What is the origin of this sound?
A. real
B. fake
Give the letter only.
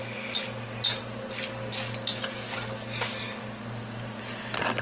A